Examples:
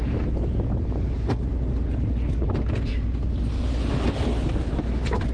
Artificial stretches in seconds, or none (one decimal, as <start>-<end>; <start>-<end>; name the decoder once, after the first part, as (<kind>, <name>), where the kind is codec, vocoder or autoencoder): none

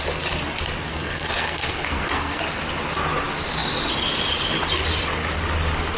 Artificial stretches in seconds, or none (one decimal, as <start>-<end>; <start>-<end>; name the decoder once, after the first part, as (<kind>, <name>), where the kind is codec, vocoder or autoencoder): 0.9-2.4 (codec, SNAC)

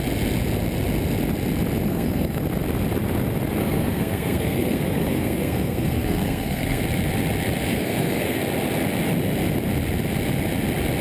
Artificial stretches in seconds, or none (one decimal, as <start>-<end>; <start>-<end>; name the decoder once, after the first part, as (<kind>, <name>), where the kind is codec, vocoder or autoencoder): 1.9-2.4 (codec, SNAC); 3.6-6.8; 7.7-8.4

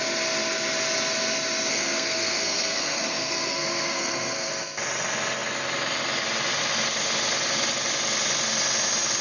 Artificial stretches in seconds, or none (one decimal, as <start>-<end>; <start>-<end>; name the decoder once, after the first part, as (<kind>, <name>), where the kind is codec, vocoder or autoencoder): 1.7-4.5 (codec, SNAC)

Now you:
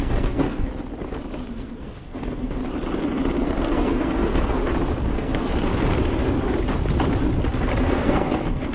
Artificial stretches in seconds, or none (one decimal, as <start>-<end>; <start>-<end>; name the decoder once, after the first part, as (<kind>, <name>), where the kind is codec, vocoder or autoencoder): 0.0-0.7 (codec, SNAC); 1.5-2.6; 3.4-4.6; 5.1-5.5; 7.8-8.7